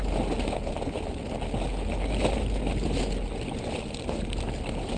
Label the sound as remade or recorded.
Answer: recorded